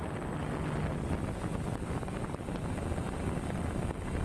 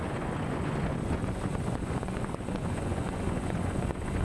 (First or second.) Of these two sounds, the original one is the first